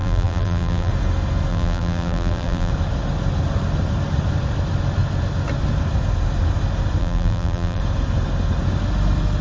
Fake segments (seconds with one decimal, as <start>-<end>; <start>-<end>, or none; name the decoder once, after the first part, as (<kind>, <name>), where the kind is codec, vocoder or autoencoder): 0.0-0.9 (vocoder, BigVGAN v2); 1.5-2.7; 7.0-7.8